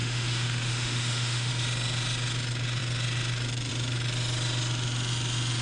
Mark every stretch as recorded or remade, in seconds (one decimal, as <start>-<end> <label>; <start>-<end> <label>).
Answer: 0.0-1.5 remade; 1.5-5.6 recorded